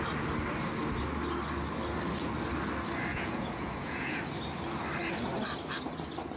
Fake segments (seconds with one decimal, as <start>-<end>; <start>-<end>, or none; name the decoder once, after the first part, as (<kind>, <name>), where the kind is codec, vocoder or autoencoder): 3.1-4.2 (vocoder, Vocos)